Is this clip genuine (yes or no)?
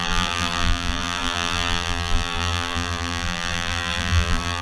no